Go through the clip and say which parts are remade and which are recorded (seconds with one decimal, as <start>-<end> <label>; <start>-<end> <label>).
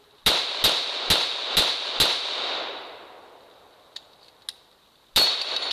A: 0.0-5.7 recorded